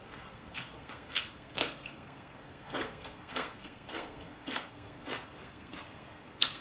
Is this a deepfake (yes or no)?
yes